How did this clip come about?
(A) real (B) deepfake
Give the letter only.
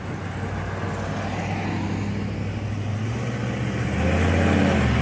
A